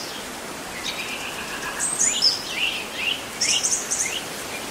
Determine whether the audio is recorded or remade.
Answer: recorded